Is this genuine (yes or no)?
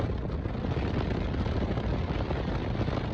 yes